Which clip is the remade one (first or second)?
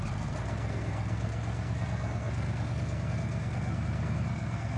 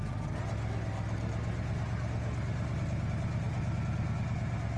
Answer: first